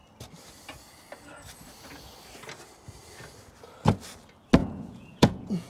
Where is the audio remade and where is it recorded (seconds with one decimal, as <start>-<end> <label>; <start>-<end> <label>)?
0.0-4.6 recorded; 4.6-5.7 remade